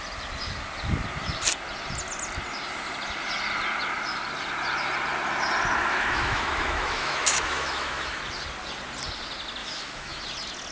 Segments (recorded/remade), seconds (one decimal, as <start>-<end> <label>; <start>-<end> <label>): 0.0-5.8 recorded; 5.8-8.2 remade; 8.2-9.6 recorded; 9.6-10.2 remade; 10.2-10.7 recorded